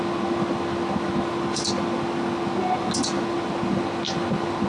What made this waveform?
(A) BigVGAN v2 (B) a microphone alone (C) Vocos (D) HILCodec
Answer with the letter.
B